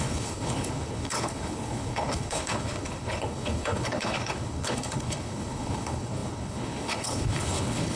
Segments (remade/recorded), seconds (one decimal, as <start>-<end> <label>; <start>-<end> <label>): 0.0-8.0 remade

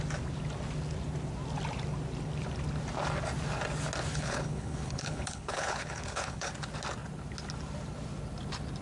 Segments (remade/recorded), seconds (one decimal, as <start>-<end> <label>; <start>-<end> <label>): 0.0-4.1 recorded; 4.1-6.5 remade; 6.5-8.8 recorded

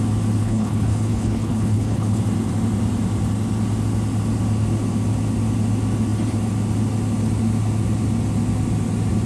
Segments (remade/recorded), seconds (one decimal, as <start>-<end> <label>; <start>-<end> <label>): 0.0-0.4 recorded; 0.4-2.2 remade; 2.2-9.3 recorded

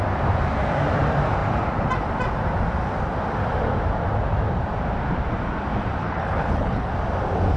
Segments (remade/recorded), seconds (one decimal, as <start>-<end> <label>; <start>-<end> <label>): 0.0-6.0 recorded; 6.0-6.9 remade; 6.9-7.6 recorded

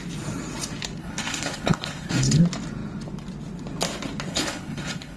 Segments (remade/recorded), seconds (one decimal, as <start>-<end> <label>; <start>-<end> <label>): 0.0-1.0 recorded; 1.0-2.4 remade; 2.4-4.3 recorded; 4.3-5.2 remade

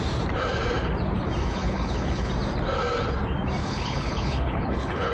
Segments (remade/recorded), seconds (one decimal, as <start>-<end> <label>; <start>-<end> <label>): 0.0-1.4 recorded; 1.4-2.3 remade; 2.3-3.6 recorded; 3.6-5.1 remade